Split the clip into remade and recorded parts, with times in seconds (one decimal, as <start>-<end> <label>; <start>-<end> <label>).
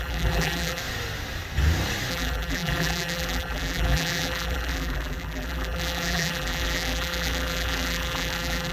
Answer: 0.0-0.8 remade; 0.8-2.1 recorded; 2.1-8.7 remade